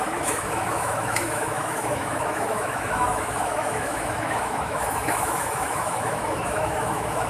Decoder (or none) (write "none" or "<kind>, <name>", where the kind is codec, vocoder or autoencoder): autoencoder, DAC-VAE